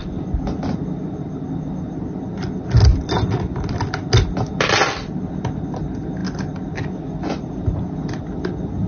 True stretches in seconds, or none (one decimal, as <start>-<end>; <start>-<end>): 0.0-8.9